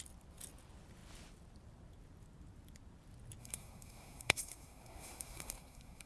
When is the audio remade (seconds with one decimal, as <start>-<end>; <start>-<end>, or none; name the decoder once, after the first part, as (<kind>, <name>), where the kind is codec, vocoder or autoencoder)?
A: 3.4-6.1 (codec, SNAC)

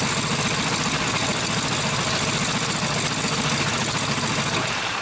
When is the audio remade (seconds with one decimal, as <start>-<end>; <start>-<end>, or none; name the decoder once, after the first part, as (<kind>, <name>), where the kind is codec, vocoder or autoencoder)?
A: none

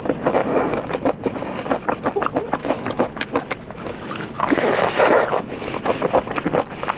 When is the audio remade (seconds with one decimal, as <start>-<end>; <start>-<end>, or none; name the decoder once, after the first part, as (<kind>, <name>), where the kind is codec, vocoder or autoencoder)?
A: 2.6-6.1 (autoencoder, DAC-VAE)